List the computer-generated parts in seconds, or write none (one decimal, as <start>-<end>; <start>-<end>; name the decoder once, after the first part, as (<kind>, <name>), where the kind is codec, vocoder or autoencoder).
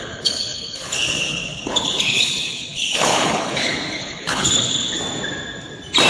0.0-5.0 (codec, HILCodec)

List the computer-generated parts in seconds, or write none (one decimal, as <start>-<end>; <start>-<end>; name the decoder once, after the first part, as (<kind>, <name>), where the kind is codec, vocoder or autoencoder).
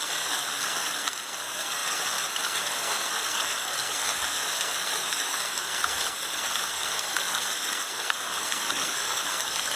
0.0-9.8 (codec, SNAC)